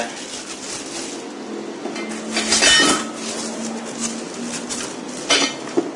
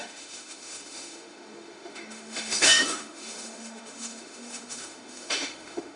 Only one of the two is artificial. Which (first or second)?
second